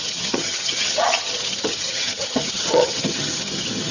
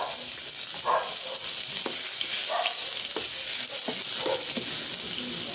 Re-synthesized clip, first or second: first